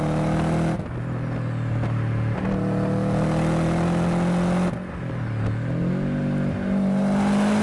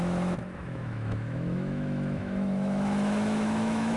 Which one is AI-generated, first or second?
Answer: second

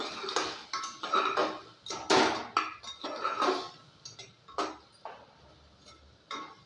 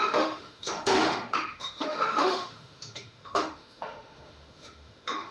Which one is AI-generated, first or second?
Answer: second